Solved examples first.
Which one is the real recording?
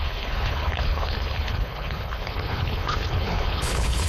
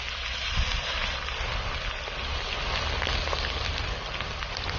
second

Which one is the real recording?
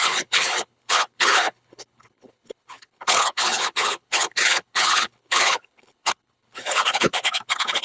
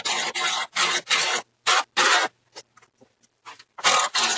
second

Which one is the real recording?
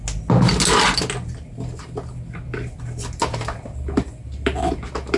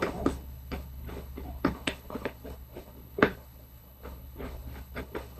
first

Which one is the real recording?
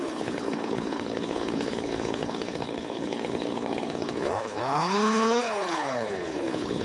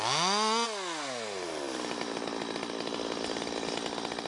second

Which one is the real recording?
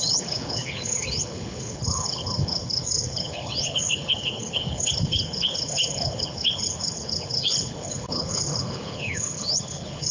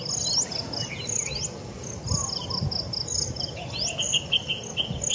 second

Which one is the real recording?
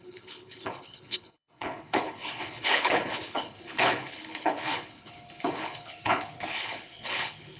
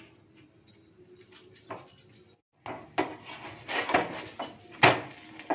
second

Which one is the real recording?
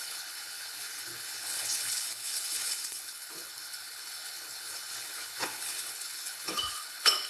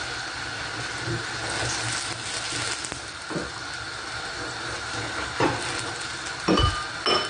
second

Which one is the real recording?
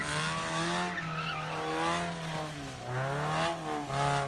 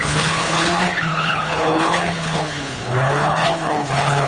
first